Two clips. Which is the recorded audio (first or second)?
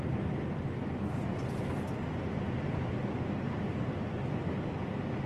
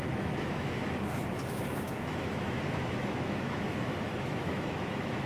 first